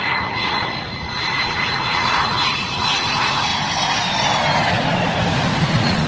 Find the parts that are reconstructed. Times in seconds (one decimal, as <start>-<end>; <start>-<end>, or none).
0.0-3.5; 5.6-6.1